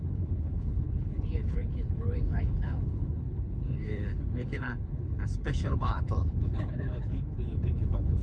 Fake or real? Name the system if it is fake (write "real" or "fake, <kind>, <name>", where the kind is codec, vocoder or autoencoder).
fake, codec, HILCodec